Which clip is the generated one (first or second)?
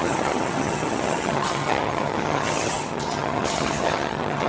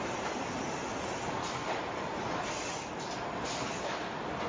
first